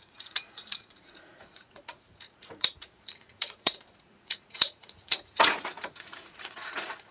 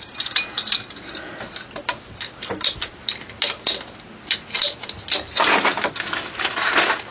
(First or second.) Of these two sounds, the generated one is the first